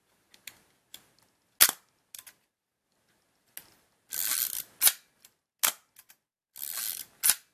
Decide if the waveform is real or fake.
real